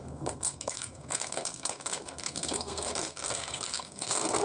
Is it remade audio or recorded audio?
remade